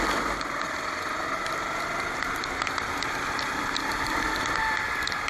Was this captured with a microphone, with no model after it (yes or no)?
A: yes